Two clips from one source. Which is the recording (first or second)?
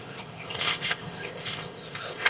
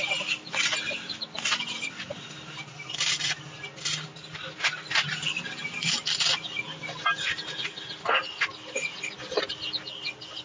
second